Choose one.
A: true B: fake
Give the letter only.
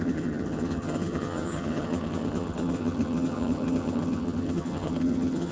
B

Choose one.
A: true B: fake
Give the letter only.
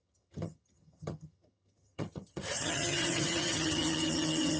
B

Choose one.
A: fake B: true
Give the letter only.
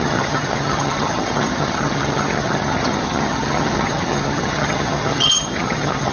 A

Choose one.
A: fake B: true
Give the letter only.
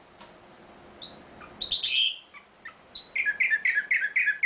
B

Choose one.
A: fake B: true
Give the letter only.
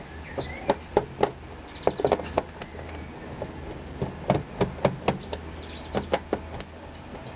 B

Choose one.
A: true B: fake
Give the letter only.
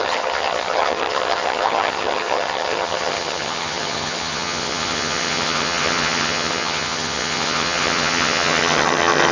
B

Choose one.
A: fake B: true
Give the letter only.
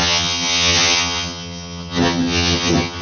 A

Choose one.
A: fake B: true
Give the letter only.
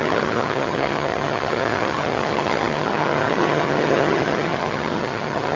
A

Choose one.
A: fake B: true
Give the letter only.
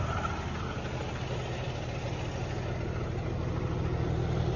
B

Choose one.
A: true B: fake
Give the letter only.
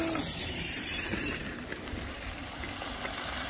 A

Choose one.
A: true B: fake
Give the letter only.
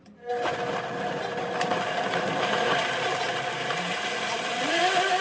A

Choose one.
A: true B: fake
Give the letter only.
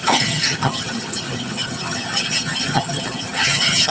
B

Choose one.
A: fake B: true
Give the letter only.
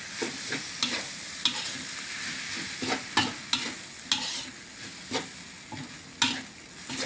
B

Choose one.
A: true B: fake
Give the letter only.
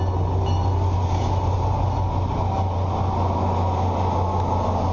A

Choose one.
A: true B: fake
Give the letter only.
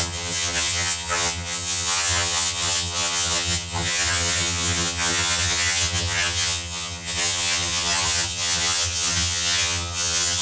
B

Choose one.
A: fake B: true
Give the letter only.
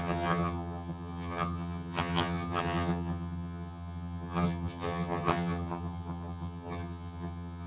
A